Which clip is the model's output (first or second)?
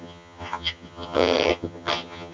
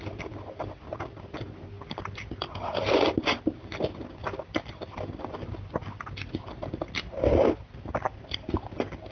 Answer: first